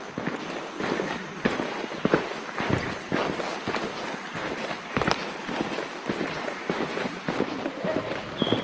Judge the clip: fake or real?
real